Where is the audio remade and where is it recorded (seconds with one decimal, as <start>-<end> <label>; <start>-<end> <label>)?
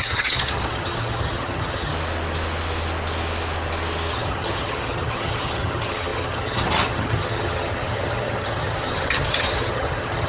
0.0-1.9 remade; 1.9-4.1 recorded; 4.1-10.3 remade